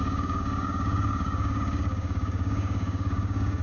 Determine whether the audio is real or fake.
fake